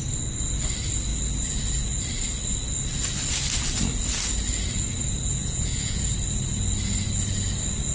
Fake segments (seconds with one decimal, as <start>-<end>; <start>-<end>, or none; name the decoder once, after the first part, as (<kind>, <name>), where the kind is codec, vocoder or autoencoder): 5.4-6.0 (vocoder, Vocos)